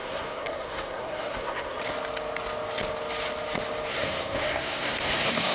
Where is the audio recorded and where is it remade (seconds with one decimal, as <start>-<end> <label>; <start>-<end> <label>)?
0.0-1.8 remade; 1.8-3.9 recorded; 3.9-5.5 remade